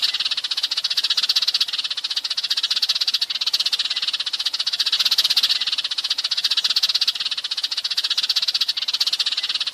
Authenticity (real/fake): real